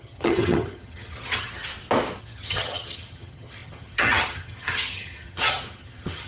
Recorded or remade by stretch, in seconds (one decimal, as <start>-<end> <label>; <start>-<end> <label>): 0.0-1.7 remade; 1.7-2.2 recorded; 2.2-6.3 remade